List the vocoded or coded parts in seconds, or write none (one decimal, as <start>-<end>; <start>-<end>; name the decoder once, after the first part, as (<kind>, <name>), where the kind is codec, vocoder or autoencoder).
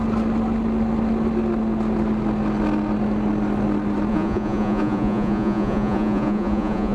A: 4.1-6.9 (vocoder, Vocos)